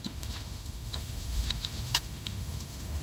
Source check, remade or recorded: remade